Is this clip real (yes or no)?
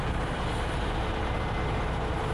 no